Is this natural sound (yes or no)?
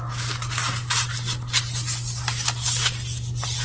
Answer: yes